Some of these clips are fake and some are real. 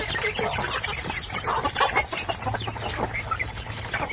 real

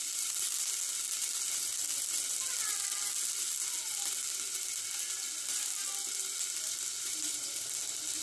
real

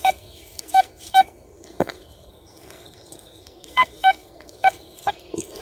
fake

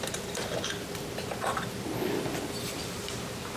real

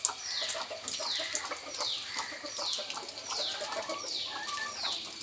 real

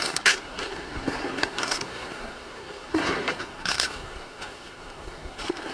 fake